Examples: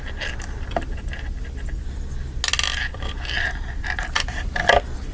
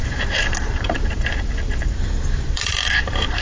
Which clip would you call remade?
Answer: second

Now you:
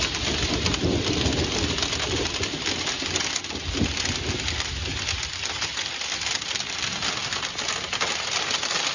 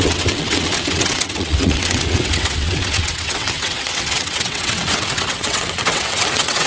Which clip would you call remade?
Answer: second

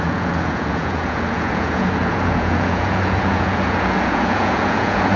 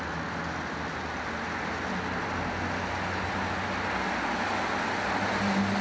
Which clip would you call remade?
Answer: first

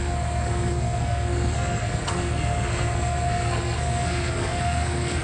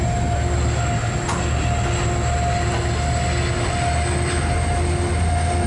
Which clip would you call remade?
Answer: first